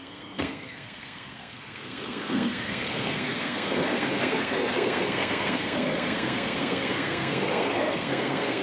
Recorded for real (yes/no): no